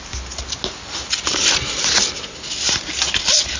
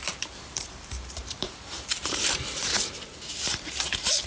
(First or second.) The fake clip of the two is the second